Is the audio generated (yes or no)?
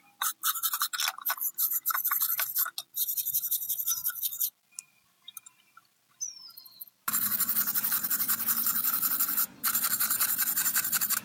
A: no